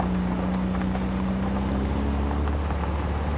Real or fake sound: real